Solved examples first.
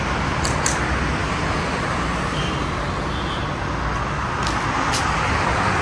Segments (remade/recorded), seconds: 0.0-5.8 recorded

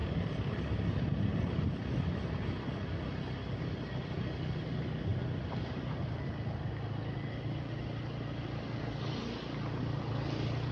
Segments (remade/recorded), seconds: 0.0-0.8 remade; 0.8-10.7 recorded

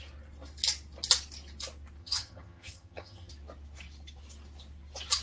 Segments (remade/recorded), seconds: 0.0-2.0 recorded; 2.0-3.3 remade; 3.3-5.2 recorded

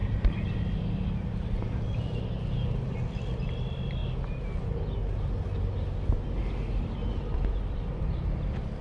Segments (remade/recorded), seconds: 0.0-2.7 recorded; 2.7-4.0 remade; 4.0-8.0 recorded; 8.0-8.8 remade

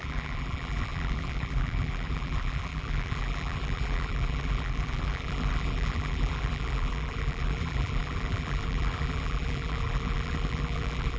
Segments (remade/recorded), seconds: 0.0-11.2 remade

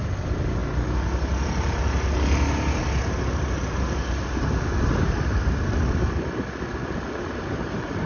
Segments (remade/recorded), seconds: 0.0-6.8 recorded; 6.8-8.1 remade

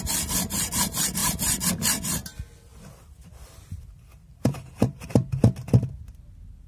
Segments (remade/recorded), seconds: 0.0-2.7 recorded; 2.7-5.4 remade; 5.4-6.7 recorded